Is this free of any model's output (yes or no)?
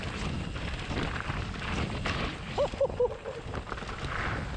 yes